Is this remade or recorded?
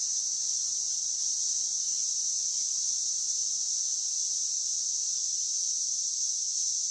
remade